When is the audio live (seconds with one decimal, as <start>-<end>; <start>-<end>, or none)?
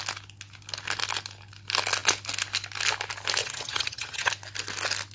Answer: 0.0-3.4; 4.3-5.1